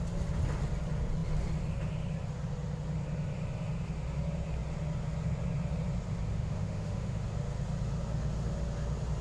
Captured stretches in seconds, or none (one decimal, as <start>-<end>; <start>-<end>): 0.0-6.3; 7.2-9.2